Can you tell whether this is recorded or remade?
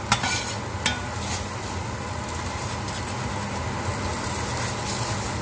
recorded